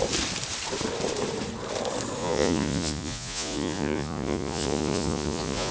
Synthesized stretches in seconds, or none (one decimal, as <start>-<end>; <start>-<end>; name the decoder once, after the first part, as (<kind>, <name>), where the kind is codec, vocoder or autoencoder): 2.2-5.7 (vocoder, Vocos)